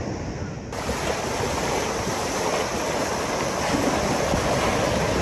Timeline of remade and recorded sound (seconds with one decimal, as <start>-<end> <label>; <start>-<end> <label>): 0.0-5.2 recorded